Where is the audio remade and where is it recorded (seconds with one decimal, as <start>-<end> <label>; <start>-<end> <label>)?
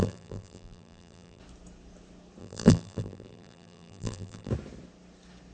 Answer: 0.0-1.4 remade; 1.4-2.4 recorded; 2.4-4.5 remade; 4.5-5.5 recorded